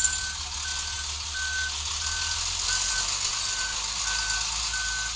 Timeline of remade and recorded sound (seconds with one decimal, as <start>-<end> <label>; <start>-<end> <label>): 0.0-5.2 recorded